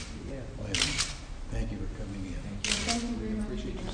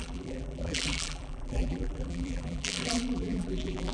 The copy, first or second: second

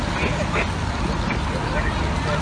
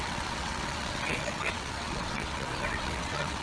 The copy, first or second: second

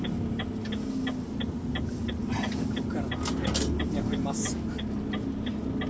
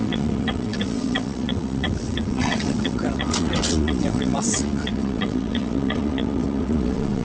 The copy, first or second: second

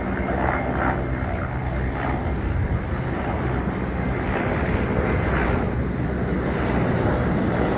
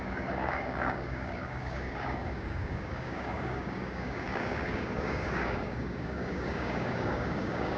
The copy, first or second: second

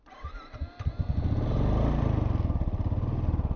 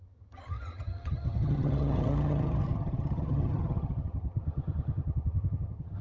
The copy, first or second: second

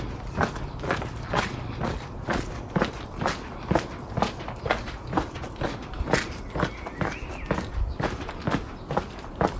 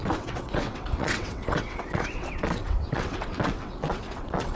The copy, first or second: second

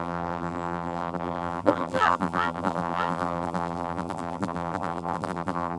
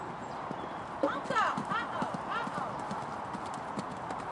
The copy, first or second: first